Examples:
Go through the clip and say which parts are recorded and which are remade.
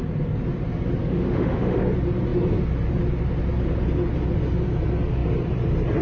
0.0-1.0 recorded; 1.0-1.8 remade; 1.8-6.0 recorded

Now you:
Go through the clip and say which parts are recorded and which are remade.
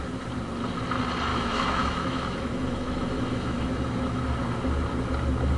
0.0-1.3 recorded; 1.3-4.2 remade; 4.2-5.6 recorded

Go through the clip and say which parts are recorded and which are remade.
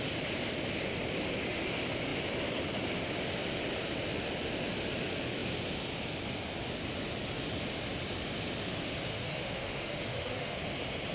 0.0-9.1 recorded; 9.1-10.6 remade; 10.6-11.1 recorded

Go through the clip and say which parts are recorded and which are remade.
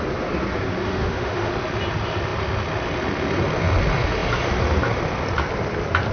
0.0-0.8 recorded; 0.8-1.5 remade; 1.5-6.1 recorded